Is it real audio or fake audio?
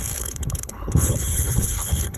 fake